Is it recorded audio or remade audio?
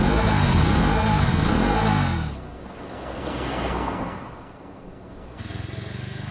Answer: remade